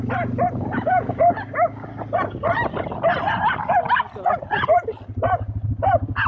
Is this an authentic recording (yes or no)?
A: yes